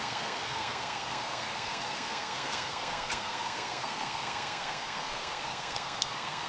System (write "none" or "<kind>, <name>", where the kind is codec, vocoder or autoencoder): codec, SNAC